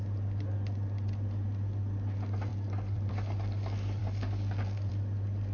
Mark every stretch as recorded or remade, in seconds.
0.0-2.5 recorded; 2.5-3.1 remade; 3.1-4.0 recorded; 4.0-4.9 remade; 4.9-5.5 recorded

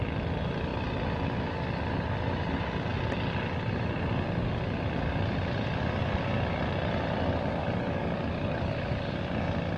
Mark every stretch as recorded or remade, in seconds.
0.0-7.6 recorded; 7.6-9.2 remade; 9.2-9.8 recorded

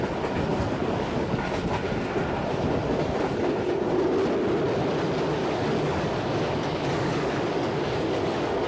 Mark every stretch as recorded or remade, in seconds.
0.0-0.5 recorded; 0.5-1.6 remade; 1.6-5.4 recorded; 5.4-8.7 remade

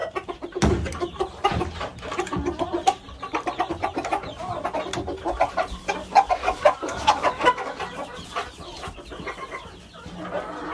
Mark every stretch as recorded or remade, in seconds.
0.0-6.0 recorded; 6.0-7.8 remade; 7.8-10.7 recorded

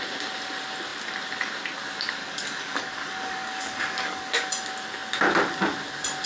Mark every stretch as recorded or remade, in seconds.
0.0-2.2 recorded; 2.2-4.5 remade; 4.5-6.3 recorded